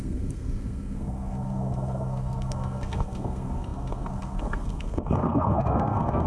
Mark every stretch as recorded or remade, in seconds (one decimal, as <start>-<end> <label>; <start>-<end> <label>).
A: 0.0-6.3 remade